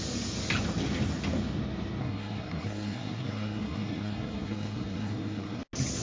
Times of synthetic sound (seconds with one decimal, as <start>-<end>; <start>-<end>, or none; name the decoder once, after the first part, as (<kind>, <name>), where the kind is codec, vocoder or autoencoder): 2.0-5.6 (codec, SNAC)